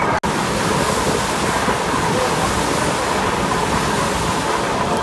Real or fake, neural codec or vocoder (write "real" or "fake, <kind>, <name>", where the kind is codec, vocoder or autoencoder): real